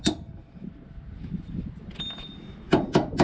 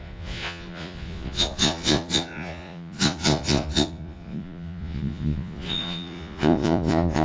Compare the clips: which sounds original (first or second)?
first